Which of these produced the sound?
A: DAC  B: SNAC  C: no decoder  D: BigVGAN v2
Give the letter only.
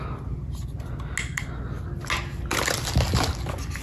C